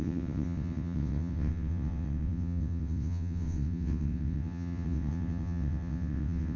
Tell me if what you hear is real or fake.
fake